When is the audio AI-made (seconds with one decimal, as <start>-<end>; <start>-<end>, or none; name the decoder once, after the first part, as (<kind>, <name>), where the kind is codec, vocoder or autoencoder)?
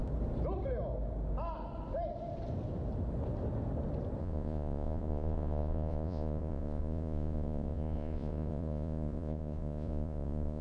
4.2-10.6 (vocoder, Vocos)